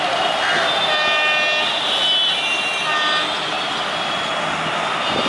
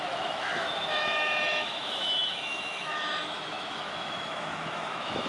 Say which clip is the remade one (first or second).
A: second